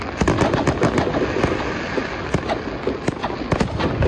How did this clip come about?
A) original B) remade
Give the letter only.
A